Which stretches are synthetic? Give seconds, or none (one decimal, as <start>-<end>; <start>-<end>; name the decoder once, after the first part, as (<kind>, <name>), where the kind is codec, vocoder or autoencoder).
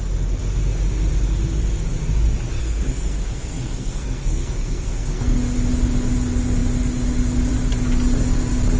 2.6-5.4 (codec, SNAC)